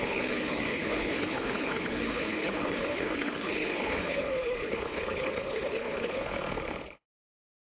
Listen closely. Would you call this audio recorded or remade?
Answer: remade